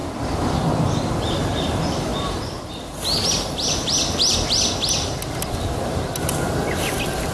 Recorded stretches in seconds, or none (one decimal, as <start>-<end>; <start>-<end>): 0.0-7.3